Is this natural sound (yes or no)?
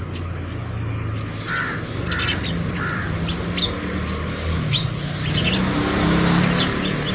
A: yes